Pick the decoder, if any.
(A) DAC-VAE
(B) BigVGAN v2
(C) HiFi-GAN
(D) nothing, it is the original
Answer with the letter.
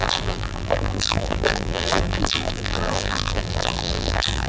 B